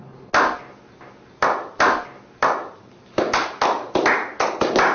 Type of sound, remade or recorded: recorded